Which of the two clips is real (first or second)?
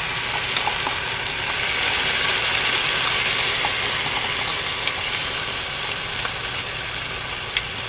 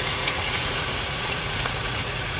first